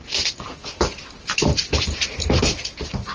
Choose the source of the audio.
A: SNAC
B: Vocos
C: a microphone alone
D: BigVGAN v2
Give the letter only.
C